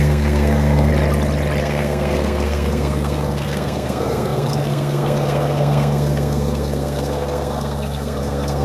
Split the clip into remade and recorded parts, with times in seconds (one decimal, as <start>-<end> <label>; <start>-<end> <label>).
0.0-0.9 remade; 0.9-1.6 recorded; 1.6-8.6 remade